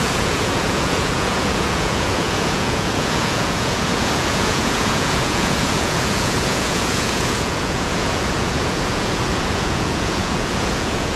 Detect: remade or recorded remade